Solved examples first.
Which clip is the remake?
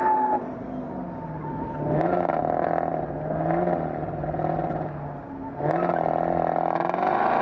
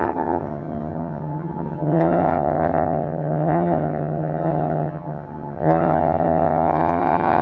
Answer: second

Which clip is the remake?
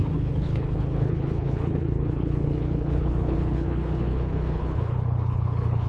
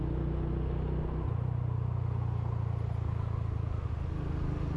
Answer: first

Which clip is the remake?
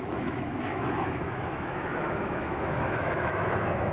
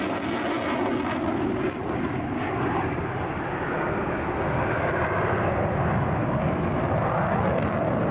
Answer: first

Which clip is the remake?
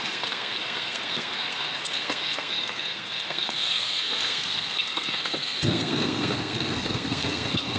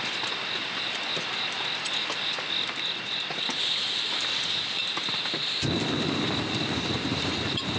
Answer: first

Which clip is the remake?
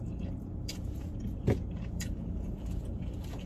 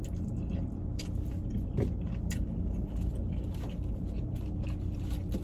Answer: first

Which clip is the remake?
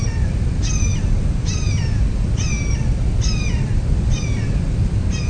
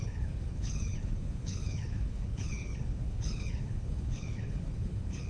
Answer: second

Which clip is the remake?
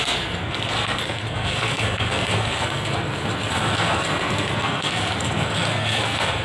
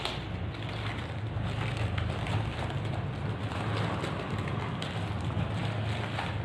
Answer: first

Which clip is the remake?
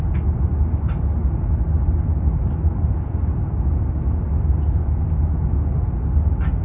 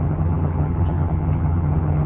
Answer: second